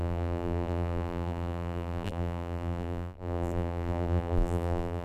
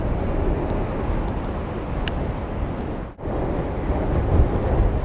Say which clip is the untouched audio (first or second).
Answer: second